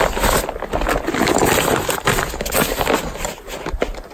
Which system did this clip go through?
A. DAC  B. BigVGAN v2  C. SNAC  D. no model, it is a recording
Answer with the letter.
D